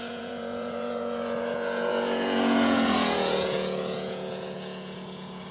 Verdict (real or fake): fake